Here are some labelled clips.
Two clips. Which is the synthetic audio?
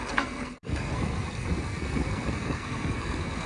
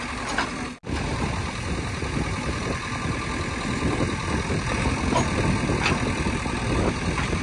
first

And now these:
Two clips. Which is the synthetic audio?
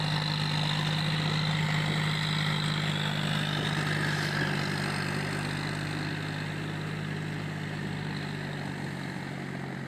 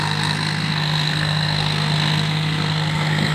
second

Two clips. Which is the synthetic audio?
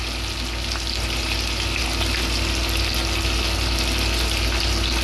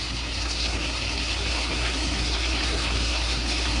second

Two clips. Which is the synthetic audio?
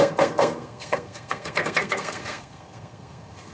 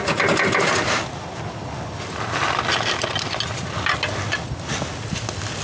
first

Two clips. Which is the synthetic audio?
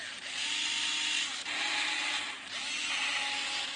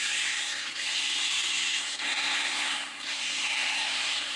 second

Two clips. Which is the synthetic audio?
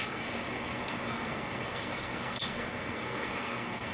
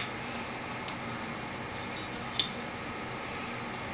first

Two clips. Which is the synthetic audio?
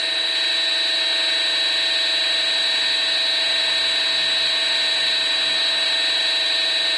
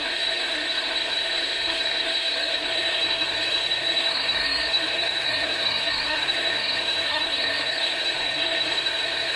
second